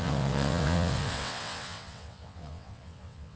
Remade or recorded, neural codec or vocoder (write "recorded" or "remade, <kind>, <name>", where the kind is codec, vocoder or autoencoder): remade, vocoder, WaveNeXt